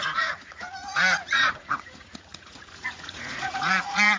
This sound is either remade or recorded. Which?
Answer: remade